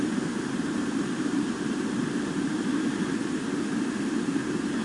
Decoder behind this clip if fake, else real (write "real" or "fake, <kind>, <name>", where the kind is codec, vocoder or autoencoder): real